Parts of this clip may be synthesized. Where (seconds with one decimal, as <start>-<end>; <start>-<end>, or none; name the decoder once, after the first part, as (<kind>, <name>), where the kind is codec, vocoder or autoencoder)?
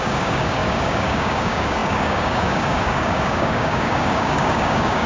0.0-5.1 (codec, DAC)